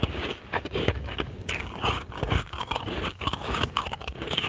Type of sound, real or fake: fake